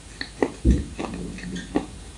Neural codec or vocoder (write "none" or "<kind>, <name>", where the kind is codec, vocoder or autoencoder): none